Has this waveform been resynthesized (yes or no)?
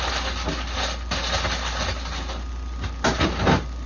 no